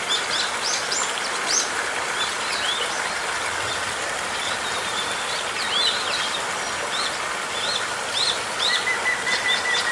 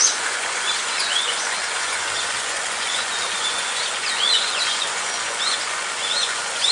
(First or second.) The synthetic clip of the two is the second